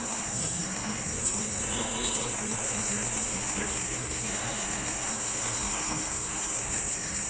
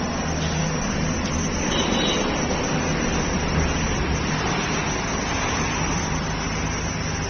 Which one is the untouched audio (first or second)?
second